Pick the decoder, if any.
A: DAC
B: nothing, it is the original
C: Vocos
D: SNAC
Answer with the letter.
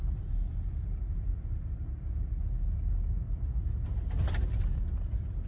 B